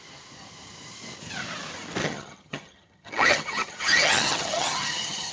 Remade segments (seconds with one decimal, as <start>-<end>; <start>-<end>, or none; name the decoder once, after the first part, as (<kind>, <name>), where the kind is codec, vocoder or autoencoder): 2.0-5.3 (vocoder, HiFi-GAN)